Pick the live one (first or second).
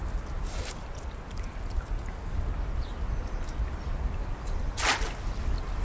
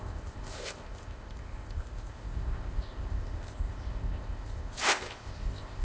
first